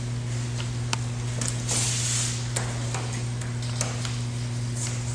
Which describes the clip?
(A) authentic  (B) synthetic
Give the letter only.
A